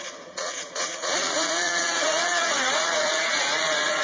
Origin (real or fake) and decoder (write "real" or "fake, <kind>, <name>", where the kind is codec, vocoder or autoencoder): fake, vocoder, Vocos